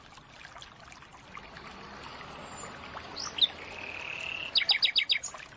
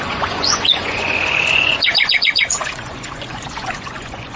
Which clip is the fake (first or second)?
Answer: second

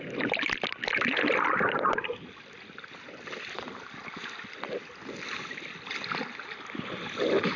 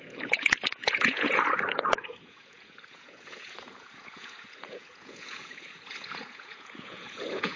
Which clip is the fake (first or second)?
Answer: second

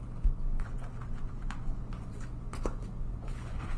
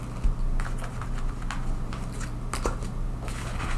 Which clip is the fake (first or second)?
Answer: first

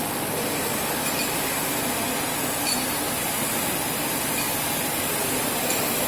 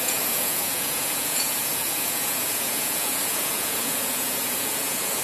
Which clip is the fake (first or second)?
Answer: second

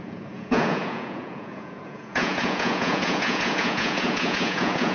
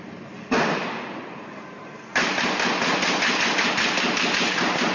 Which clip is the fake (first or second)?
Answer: first